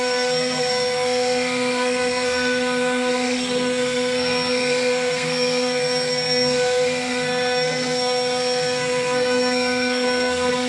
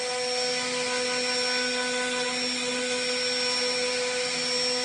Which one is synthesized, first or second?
first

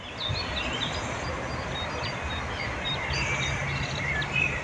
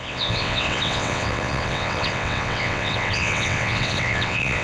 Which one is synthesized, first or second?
second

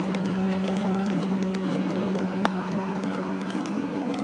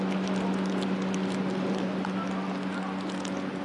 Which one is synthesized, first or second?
first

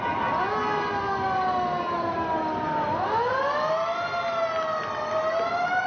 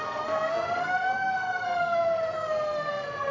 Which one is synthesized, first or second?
second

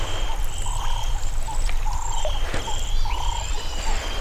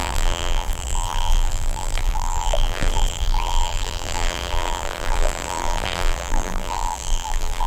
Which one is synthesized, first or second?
second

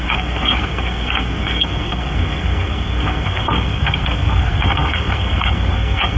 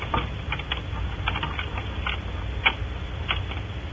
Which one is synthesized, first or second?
first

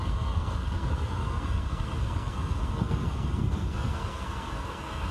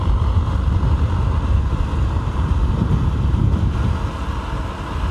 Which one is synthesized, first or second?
first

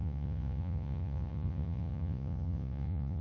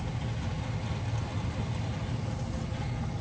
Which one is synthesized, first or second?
first